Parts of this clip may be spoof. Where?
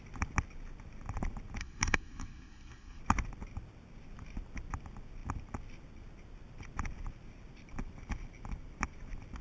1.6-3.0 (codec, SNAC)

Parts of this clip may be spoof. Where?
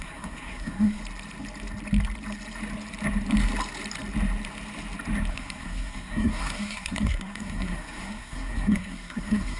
0.0-1.0 (codec, SNAC); 5.3-9.6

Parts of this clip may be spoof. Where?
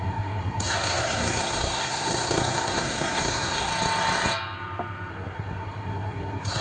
0.0-3.7 (codec, SNAC); 5.1-6.6